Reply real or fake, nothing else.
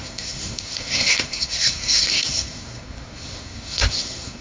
fake